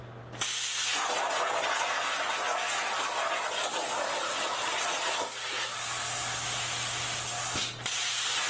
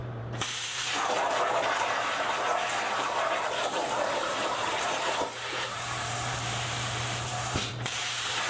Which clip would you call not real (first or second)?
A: second